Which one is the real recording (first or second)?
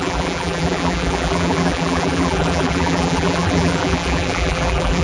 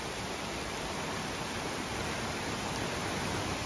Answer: second